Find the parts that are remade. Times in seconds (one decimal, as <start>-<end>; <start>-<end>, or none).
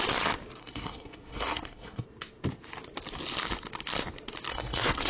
0.6-2.0; 4.5-5.1